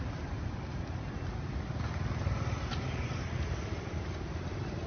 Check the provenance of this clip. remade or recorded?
remade